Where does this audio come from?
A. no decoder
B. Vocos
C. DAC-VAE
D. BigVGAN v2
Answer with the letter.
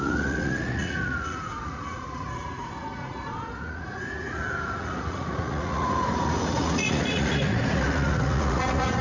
B